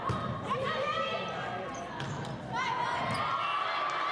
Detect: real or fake real